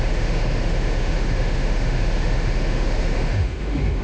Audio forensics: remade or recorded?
remade